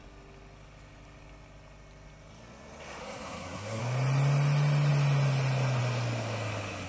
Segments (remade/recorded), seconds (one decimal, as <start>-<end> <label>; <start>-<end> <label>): 0.0-3.0 recorded; 3.0-3.8 remade; 3.8-6.9 recorded